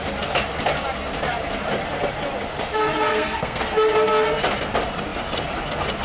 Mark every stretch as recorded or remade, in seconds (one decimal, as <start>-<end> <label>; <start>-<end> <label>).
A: 0.0-3.1 recorded; 3.1-3.6 remade; 3.6-6.0 recorded